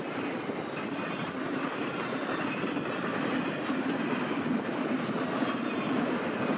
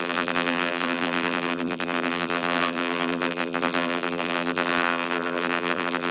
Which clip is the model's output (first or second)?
second